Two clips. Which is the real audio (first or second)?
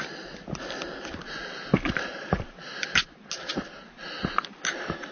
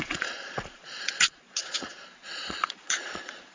first